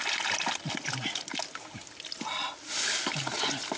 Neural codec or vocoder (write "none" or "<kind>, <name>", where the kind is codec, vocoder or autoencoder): none